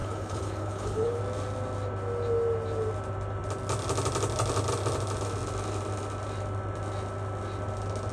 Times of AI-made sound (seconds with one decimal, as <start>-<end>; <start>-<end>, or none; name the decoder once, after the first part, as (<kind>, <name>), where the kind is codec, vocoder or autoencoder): 0.0-1.2 (codec, HILCodec)